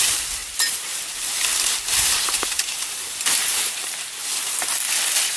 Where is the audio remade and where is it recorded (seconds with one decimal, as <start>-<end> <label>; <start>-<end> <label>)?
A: 0.0-0.4 remade; 0.4-0.9 recorded; 0.9-4.2 remade; 4.2-5.4 recorded